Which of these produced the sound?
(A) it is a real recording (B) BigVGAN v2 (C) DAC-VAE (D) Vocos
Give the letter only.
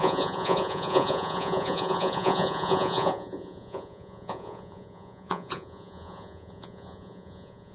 D